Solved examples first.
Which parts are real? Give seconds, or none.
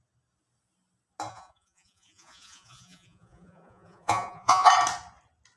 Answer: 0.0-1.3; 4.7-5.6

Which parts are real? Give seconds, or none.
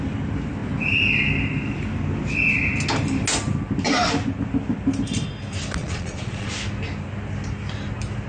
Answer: 0.0-5.8; 6.5-8.3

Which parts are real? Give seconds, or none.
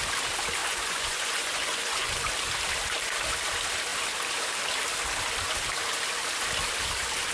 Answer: 0.0-0.6; 2.3-7.3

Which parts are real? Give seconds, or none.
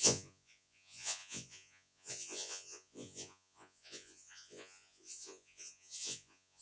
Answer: none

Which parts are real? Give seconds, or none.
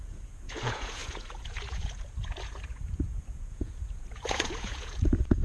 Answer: none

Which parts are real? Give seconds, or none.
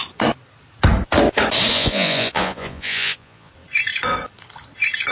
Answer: 0.0-1.7; 3.5-5.1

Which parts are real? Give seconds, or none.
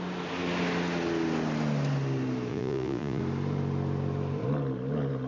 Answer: 0.0-2.5; 3.2-5.3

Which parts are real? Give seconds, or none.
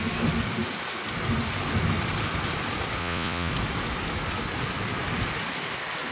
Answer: 0.0-3.0; 3.5-6.1